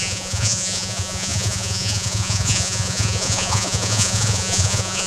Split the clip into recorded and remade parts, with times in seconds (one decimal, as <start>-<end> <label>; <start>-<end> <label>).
0.0-5.1 remade

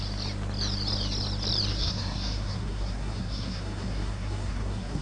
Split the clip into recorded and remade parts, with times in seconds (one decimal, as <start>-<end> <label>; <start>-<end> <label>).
0.0-1.7 recorded; 1.7-5.0 remade

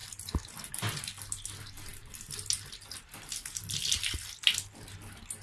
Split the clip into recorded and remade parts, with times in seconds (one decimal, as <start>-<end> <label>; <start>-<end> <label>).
0.0-5.4 recorded

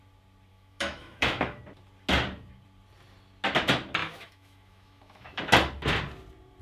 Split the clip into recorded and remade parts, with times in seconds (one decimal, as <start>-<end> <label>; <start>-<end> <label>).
0.0-0.5 recorded; 0.5-1.6 remade; 1.6-4.0 recorded; 4.0-5.4 remade; 5.4-6.6 recorded

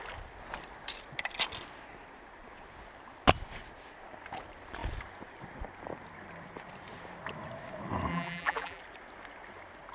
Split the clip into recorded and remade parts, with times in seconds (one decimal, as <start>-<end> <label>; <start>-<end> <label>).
0.0-8.1 recorded; 8.1-8.8 remade; 8.8-9.9 recorded